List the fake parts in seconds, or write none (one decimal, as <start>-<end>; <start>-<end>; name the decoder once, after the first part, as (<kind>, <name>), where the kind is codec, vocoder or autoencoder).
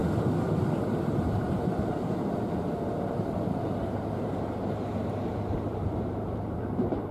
0.6-7.1 (vocoder, BigVGAN v2)